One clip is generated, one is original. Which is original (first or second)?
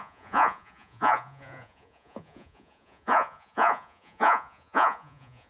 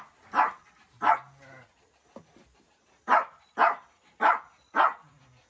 second